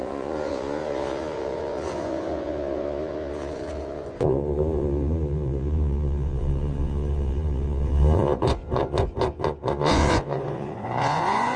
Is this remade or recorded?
remade